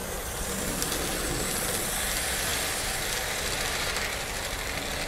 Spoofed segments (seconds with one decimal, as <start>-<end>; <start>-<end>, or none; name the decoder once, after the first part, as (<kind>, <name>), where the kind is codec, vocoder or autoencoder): none